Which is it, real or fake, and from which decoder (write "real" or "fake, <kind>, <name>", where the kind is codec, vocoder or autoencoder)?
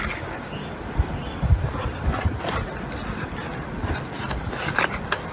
real